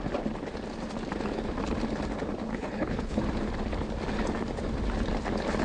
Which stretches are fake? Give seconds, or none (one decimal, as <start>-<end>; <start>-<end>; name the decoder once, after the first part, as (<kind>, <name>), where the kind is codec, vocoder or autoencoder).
2.5-3.2 (codec, HILCodec)